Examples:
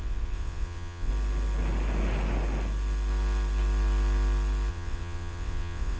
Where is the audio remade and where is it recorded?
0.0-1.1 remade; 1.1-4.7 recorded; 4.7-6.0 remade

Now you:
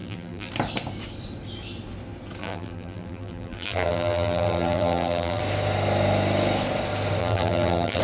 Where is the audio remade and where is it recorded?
0.0-0.5 remade; 0.5-2.4 recorded; 2.4-5.4 remade; 5.4-7.2 recorded; 7.2-8.0 remade

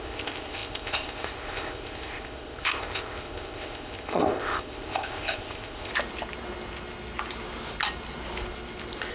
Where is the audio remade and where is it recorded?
0.0-5.9 remade; 5.9-9.1 recorded

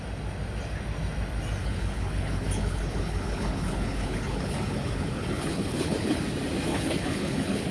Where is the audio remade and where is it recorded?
0.0-1.6 recorded; 1.6-6.2 remade; 6.2-6.7 recorded; 6.7-7.7 remade

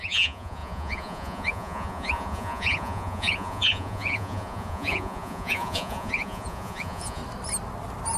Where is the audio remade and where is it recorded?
0.0-7.2 remade; 7.2-8.2 recorded

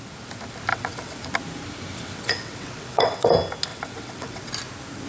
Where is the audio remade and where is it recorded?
0.0-0.7 recorded; 0.7-1.3 remade; 1.3-1.9 recorded; 1.9-3.3 remade; 3.3-3.7 recorded; 3.7-4.5 remade; 4.5-5.1 recorded

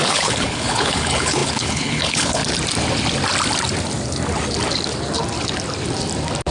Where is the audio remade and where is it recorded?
0.0-2.4 remade; 2.4-6.5 recorded